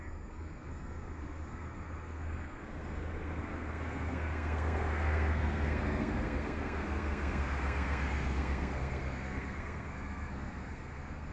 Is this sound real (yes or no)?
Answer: no